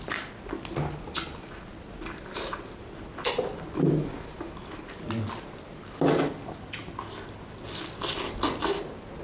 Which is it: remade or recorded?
recorded